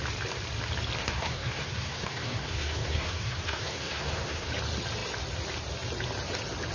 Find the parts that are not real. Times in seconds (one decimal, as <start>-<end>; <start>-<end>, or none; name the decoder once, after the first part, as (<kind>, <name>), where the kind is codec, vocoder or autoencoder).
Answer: 1.0-4.5 (codec, SNAC)